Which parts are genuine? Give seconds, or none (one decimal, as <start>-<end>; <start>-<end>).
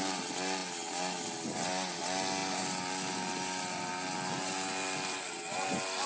0.0-6.1